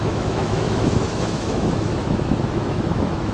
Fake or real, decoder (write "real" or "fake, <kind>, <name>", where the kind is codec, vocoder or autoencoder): fake, autoencoder, DAC-VAE